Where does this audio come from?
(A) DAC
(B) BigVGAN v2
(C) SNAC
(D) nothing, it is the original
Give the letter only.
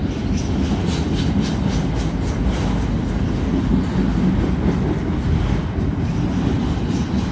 D